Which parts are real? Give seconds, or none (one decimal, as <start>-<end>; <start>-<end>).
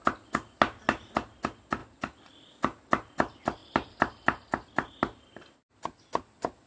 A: 0.0-1.8; 2.5-3.6; 4.9-6.7